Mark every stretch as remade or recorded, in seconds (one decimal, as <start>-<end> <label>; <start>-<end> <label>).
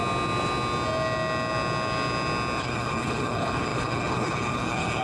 0.0-2.6 recorded; 2.6-5.0 remade